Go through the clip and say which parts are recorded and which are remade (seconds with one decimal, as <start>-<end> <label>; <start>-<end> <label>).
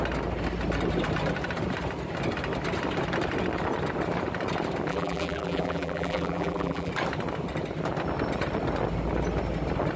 0.0-4.9 recorded; 4.9-6.9 remade; 6.9-10.0 recorded